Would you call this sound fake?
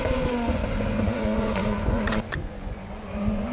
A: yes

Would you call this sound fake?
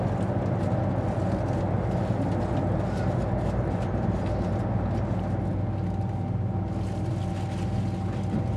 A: no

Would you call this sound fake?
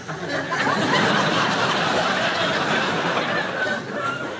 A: no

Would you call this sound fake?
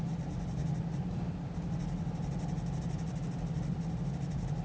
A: no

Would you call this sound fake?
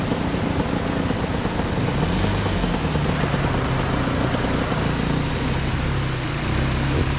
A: no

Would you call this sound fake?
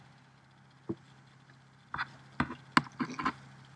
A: no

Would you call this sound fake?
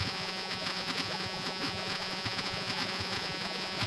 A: yes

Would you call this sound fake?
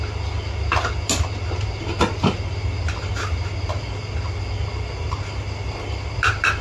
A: no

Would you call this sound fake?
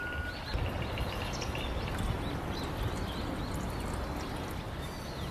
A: no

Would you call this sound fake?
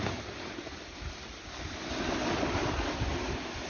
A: no